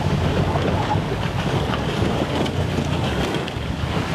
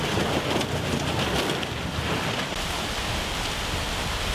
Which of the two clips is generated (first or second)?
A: first